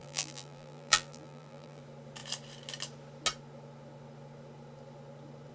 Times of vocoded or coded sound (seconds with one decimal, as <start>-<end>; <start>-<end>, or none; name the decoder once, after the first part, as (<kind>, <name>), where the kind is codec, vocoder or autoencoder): 0.0-1.8 (vocoder, BigVGAN v2)